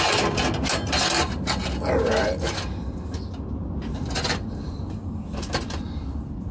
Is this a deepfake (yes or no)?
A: no